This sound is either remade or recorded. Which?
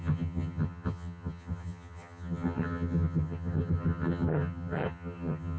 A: remade